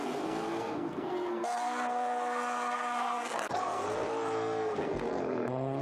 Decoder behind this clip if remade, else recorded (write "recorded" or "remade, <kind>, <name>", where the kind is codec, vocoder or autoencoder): remade, codec, SNAC